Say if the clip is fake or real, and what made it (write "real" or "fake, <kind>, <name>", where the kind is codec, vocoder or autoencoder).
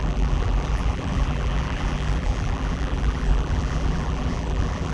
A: fake, vocoder, BigVGAN v2